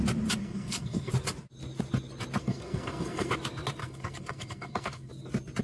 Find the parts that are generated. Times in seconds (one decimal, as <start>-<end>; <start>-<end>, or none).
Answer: 0.4-1.1; 2.4-3.3; 3.8-5.1